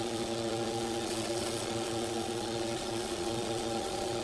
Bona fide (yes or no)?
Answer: no